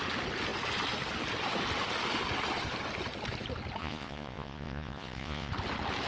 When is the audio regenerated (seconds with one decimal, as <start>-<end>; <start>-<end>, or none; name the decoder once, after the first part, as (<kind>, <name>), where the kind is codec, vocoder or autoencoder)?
3.8-5.5 (vocoder, Vocos)